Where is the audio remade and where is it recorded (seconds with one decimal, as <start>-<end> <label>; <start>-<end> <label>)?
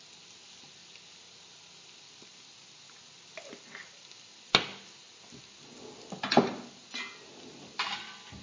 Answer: 0.0-8.4 recorded